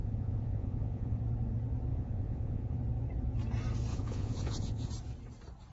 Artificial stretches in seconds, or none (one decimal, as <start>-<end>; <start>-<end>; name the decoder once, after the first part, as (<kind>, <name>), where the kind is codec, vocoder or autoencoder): 0.0-1.2 (vocoder, Vocos); 1.9-2.8; 3.9-4.9